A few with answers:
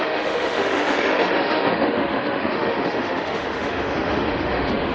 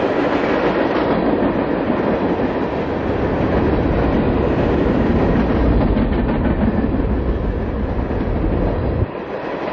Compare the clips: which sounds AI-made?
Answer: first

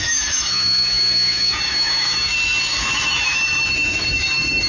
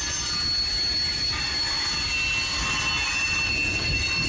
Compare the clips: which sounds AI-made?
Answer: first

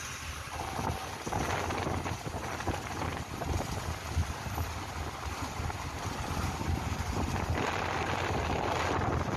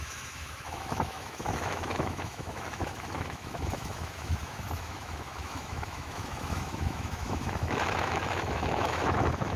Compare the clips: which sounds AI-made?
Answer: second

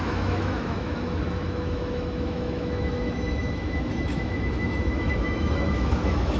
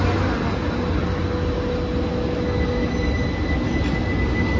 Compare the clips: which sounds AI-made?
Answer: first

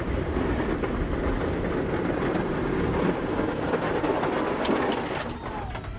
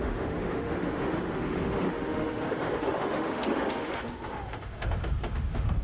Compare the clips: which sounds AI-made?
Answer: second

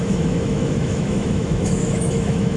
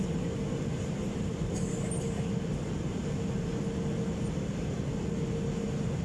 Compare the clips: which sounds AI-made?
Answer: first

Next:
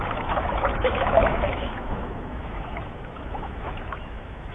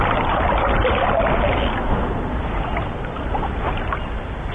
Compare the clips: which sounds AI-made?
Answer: first